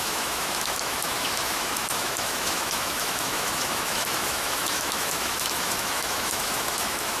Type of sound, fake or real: fake